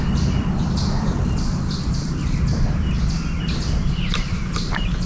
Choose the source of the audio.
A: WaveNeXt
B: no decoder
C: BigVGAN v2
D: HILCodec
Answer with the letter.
B